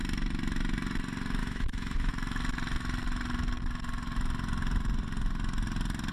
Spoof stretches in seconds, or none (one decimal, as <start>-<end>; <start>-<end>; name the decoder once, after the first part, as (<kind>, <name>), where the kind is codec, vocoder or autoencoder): 1.4-2.1 (autoencoder, DAC-VAE)